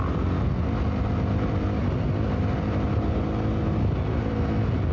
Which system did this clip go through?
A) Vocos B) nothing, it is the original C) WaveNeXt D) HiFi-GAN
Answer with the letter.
B